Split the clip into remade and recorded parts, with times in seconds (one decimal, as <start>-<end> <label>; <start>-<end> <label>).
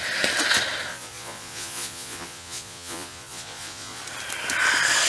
0.0-0.9 recorded; 0.9-4.0 remade; 4.0-5.1 recorded